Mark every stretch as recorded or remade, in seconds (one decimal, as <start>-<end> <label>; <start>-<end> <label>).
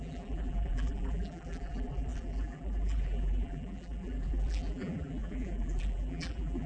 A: 0.0-6.7 remade